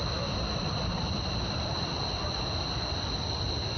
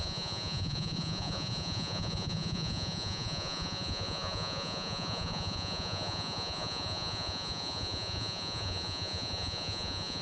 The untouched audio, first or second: first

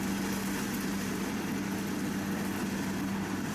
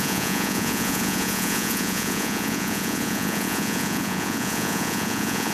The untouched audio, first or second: first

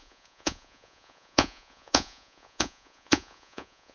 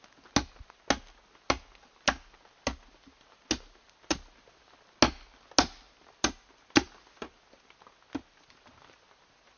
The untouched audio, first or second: second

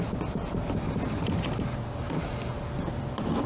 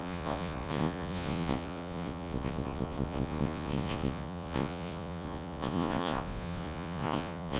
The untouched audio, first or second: first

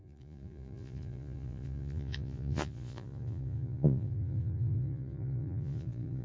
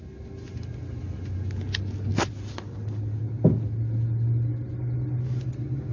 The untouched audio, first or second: second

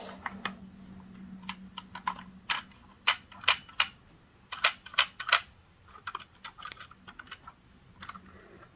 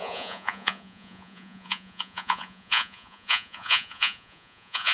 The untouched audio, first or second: first